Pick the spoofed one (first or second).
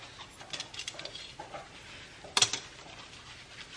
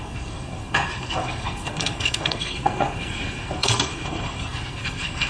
second